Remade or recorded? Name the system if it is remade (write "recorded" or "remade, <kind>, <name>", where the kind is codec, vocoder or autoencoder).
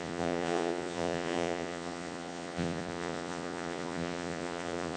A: remade, vocoder, Vocos